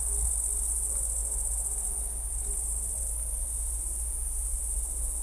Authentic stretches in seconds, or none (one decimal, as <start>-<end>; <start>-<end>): 0.0-5.2